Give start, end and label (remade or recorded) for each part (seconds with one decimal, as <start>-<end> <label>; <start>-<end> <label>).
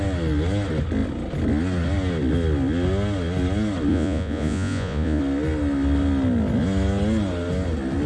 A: 0.0-3.9 recorded; 3.9-5.2 remade; 5.2-8.1 recorded